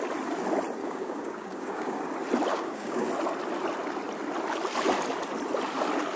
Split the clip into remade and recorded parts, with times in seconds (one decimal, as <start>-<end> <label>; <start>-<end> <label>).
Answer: 0.0-0.8 recorded; 0.8-2.0 remade; 2.0-2.5 recorded; 2.5-3.1 remade; 3.1-6.2 recorded